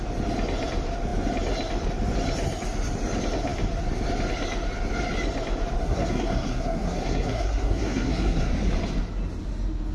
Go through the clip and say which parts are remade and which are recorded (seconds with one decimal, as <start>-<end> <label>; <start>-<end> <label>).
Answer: 0.0-5.8 recorded; 5.8-8.5 remade; 8.5-9.9 recorded